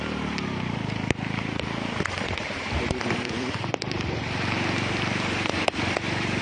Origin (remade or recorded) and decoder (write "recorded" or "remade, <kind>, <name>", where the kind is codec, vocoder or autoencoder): remade, vocoder, BigVGAN v2